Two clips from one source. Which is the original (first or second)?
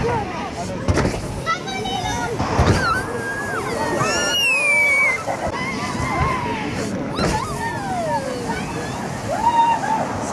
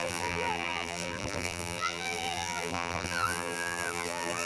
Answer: first